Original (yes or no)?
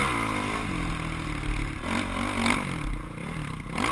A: yes